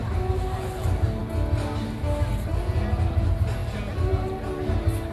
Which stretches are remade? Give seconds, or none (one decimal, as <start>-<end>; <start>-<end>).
none